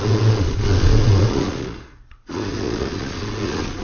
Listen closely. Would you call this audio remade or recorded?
remade